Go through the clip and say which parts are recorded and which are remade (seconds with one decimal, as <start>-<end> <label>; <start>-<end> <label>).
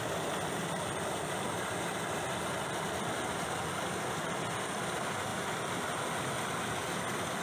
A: 0.0-7.4 recorded